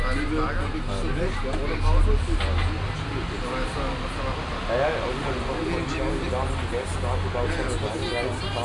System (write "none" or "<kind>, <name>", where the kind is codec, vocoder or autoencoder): none